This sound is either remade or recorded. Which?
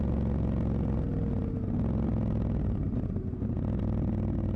recorded